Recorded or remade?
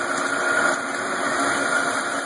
recorded